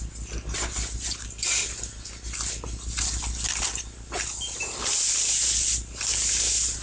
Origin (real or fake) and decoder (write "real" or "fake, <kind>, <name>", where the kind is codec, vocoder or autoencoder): real